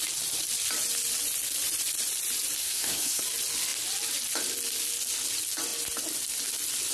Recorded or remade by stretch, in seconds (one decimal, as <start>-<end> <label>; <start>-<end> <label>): 0.0-2.6 recorded; 2.6-3.2 remade; 3.2-6.9 recorded